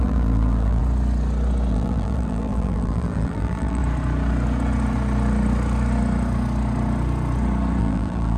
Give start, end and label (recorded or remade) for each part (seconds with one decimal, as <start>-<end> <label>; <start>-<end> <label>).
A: 0.0-0.8 remade; 0.8-1.7 recorded; 1.7-3.8 remade; 3.8-7.8 recorded; 7.8-8.4 remade